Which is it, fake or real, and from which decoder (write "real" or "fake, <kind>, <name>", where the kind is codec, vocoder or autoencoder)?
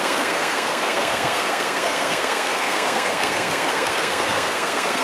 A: fake, codec, SNAC